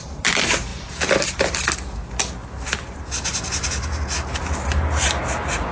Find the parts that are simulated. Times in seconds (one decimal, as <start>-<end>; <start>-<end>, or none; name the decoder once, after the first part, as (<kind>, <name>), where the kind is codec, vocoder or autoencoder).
none